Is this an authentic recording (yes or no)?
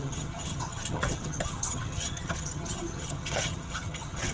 no